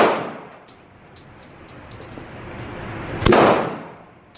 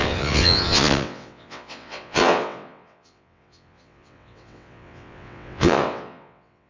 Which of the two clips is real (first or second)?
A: first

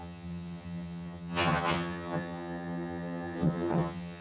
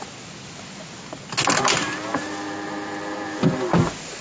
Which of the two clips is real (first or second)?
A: second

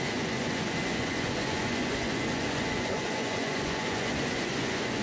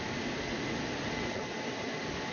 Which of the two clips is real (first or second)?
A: second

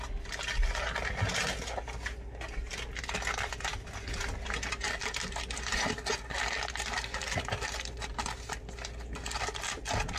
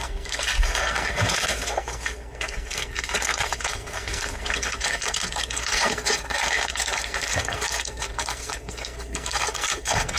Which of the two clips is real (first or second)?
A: first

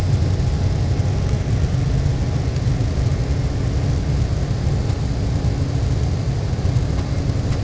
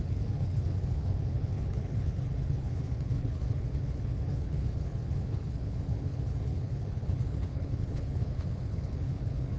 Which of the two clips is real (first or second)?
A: first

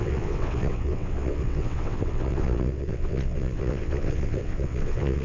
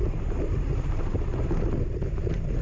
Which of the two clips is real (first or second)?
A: second